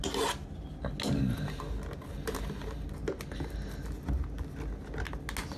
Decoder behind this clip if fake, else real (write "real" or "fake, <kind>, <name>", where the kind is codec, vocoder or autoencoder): real